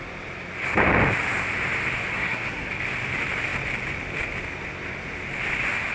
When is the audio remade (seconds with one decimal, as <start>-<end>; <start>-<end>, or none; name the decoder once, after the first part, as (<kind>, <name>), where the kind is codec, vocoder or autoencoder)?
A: 2.1-2.7 (codec, SNAC)